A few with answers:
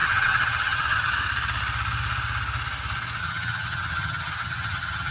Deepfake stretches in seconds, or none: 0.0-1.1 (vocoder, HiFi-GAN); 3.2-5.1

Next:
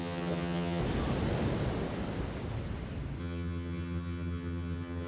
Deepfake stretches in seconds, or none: 0.0-0.8 (vocoder, HiFi-GAN); 3.2-5.1

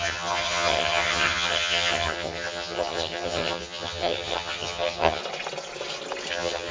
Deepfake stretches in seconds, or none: 0.0-5.2 (vocoder, HiFi-GAN); 6.3-6.7

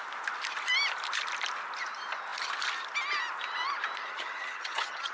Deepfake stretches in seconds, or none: 4.0-5.1 (vocoder, HiFi-GAN)

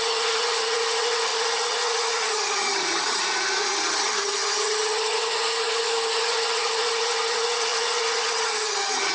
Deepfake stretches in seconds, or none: 0.0-9.1 (vocoder, HiFi-GAN)

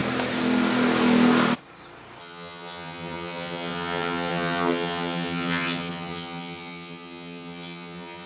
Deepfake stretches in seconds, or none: 2.2-8.3 (vocoder, HiFi-GAN)

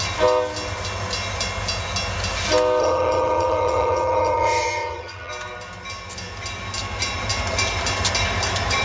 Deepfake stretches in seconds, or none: 2.8-5.3 (vocoder, HiFi-GAN)